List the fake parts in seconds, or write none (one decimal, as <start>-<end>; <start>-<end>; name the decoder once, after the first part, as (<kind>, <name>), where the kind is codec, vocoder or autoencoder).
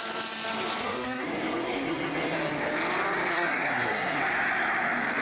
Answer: 0.8-2.5 (codec, SNAC); 3.3-4.2